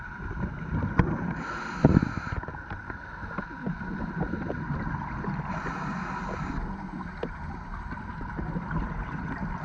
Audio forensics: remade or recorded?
recorded